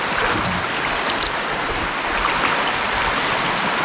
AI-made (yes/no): no